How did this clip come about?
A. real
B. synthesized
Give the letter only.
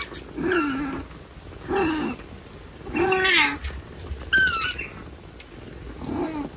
A